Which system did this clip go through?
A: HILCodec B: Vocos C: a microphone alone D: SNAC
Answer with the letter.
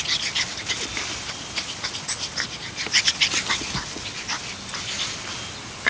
C